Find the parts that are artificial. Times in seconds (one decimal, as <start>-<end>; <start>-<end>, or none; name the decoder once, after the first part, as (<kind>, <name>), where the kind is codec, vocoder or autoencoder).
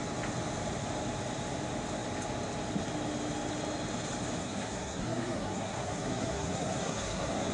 4.4-7.5 (codec, SNAC)